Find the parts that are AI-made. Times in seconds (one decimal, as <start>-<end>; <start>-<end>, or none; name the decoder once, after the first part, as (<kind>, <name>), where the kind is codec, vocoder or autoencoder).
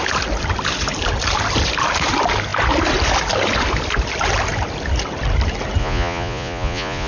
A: 5.8-7.1 (vocoder, Vocos)